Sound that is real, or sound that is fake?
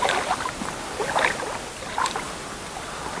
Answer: real